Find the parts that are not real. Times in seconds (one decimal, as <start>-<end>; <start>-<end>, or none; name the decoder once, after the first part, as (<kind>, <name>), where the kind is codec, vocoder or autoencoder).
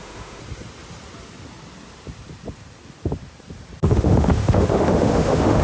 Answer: 0.0-0.4 (autoencoder, DAC-VAE); 3.8-5.6